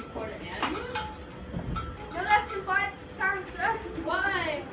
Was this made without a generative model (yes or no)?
yes